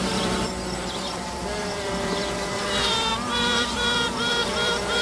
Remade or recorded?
remade